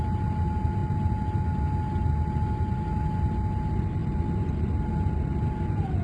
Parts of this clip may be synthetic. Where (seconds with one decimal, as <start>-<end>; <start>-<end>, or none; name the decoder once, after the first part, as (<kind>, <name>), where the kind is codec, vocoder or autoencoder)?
none